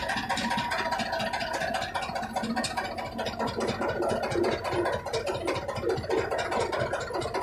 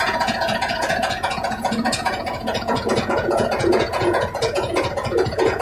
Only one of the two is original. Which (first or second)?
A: first